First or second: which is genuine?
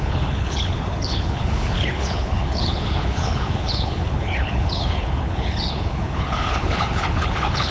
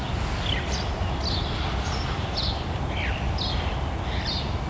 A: second